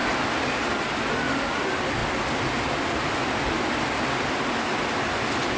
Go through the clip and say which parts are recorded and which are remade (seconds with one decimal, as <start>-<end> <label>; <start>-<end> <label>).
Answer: 0.0-5.6 recorded